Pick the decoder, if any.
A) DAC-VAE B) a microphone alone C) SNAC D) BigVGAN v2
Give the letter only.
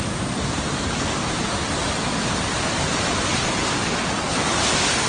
B